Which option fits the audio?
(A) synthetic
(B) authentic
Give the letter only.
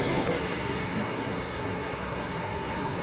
A